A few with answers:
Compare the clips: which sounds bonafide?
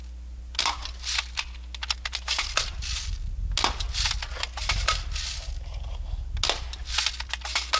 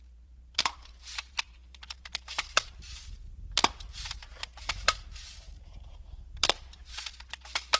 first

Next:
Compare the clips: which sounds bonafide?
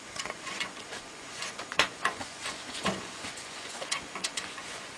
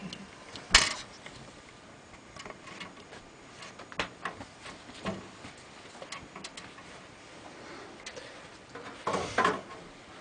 second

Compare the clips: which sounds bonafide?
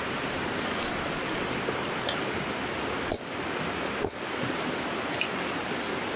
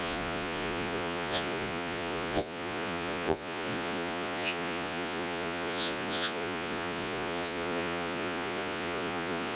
first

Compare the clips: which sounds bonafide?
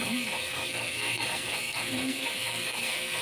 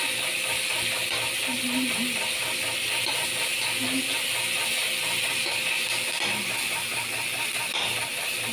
second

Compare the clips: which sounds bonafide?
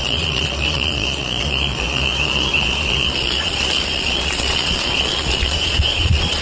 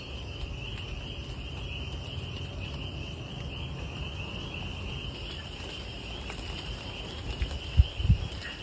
second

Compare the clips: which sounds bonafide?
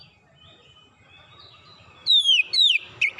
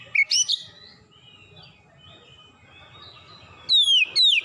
second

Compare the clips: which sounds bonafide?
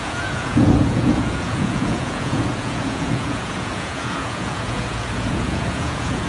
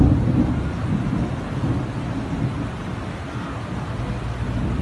second